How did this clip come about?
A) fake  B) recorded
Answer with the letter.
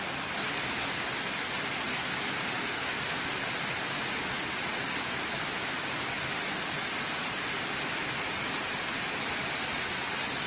B